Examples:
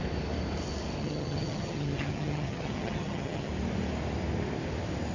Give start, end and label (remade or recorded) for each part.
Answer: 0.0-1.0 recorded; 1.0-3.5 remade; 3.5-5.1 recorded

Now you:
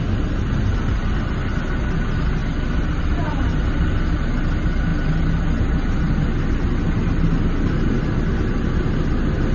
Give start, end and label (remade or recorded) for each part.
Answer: 0.0-9.5 recorded

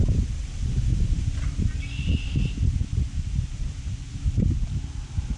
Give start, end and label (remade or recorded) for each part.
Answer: 0.0-5.4 recorded

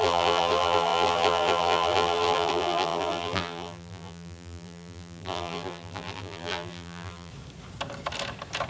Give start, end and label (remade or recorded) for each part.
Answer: 0.0-7.3 remade; 7.3-8.7 recorded

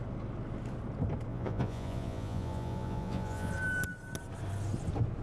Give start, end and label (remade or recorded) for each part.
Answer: 0.0-1.3 recorded; 1.3-3.5 remade; 3.5-5.2 recorded

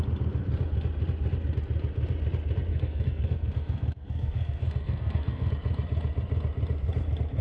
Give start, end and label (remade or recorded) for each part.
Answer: 0.0-2.7 recorded; 2.7-5.5 remade; 5.5-7.4 recorded